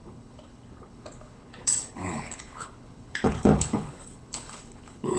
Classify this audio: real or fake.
fake